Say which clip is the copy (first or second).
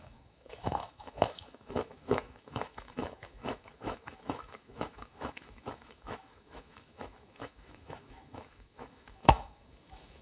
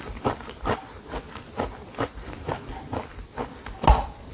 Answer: first